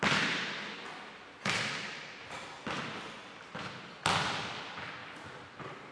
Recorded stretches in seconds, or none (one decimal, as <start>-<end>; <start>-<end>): 0.0-5.9